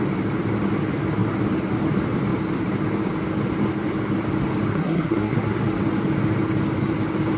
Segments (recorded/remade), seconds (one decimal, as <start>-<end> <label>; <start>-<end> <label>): 0.0-4.7 recorded; 4.7-5.6 remade; 5.6-7.4 recorded